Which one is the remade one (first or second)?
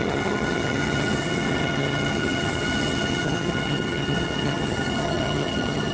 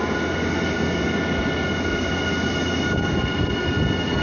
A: first